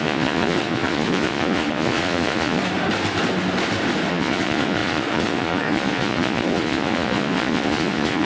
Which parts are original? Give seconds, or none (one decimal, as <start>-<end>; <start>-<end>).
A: 2.6-4.1